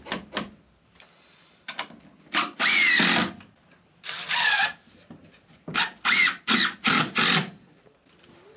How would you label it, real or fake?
real